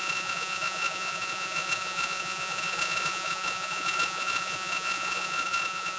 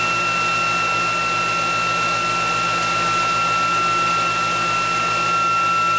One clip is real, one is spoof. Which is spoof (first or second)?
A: first